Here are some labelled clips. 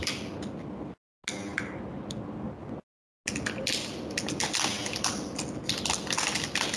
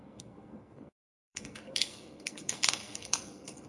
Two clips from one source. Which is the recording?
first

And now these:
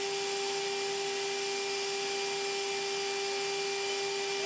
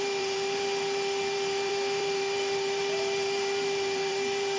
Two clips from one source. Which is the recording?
first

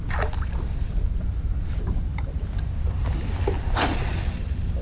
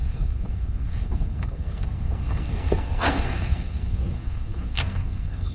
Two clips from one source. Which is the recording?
first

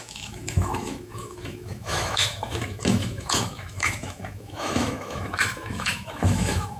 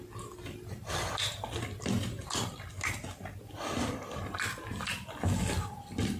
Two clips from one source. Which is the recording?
second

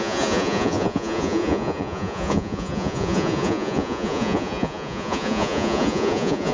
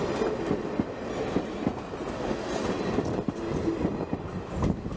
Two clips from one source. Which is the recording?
second